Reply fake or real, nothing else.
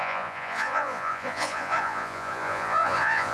fake